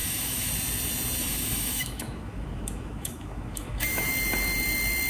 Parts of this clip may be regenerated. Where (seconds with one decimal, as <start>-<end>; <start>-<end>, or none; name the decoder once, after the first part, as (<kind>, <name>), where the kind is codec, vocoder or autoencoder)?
0.0-0.5 (autoencoder, DAC-VAE); 1.2-4.1